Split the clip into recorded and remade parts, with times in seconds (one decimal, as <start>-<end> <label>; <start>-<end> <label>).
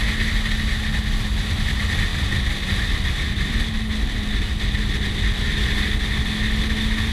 0.0-7.1 recorded